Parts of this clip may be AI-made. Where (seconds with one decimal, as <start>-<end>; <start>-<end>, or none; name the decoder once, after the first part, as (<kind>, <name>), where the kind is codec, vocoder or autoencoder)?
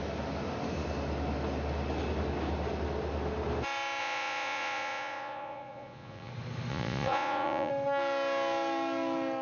4.0-6.3 (vocoder, Vocos); 6.7-7.7